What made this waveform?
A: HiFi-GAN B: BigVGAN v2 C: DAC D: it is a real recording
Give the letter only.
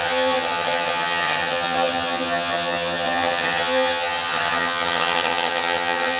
A